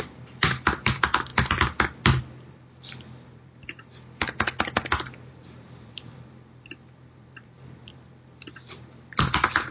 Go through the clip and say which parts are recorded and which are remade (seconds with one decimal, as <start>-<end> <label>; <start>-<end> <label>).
0.0-1.3 remade; 1.3-2.5 recorded; 2.5-3.9 remade; 3.9-5.3 recorded; 5.3-9.7 remade